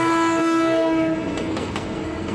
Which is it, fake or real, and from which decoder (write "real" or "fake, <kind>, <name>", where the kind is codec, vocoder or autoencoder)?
fake, codec, SNAC